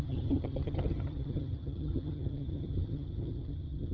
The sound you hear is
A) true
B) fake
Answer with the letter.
B